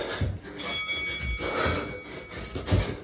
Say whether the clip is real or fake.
real